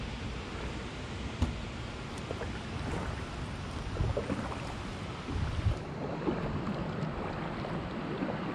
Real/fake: real